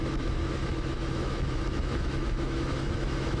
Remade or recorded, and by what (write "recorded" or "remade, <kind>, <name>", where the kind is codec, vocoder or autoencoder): remade, autoencoder, DAC-VAE